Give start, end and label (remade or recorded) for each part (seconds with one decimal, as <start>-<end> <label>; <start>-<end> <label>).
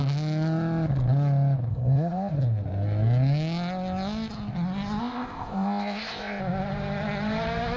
0.0-1.7 recorded; 1.7-2.3 remade; 2.3-5.0 recorded; 5.0-6.4 remade; 6.4-7.8 recorded